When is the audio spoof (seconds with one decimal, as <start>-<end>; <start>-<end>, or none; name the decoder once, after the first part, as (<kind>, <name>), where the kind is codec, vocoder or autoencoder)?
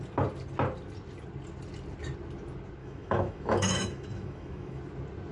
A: 2.8-4.8 (autoencoder, DAC-VAE)